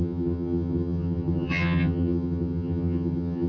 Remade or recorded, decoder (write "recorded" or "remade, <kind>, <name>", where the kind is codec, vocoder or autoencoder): remade, vocoder, HiFi-GAN